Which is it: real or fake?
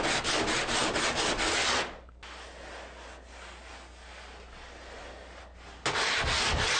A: real